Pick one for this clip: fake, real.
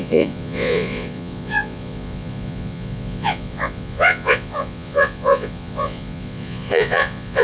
fake